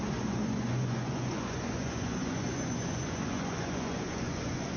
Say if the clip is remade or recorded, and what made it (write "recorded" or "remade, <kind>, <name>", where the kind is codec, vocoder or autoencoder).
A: remade, vocoder, Vocos